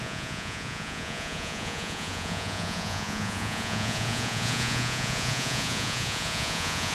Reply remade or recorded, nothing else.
remade